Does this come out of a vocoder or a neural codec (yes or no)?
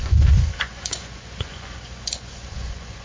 yes